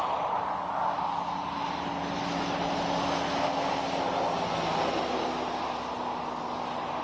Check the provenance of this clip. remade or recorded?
recorded